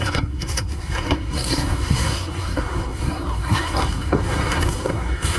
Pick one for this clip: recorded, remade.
remade